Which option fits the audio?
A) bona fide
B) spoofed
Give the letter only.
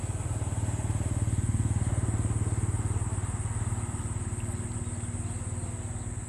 A